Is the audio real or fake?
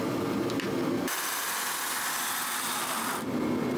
real